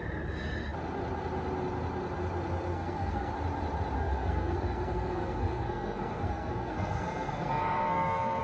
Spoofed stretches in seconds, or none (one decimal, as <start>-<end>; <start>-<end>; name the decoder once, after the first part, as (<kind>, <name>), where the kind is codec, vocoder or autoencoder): 2.7-3.3 (codec, SNAC); 4.0-8.4